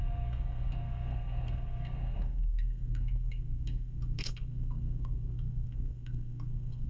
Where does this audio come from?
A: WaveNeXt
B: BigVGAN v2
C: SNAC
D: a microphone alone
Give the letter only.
C